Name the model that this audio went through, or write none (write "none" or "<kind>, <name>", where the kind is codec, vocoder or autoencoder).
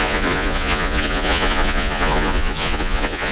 vocoder, Vocos